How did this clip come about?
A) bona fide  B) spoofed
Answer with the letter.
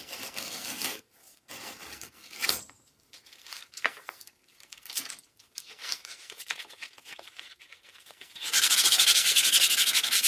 B